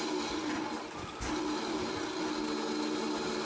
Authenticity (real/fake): real